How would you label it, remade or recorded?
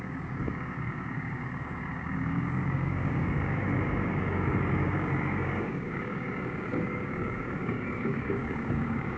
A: remade